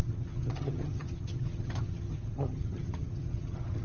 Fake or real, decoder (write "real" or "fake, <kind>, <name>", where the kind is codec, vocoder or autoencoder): fake, vocoder, HiFi-GAN